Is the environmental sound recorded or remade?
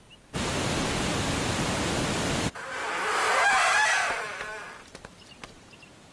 recorded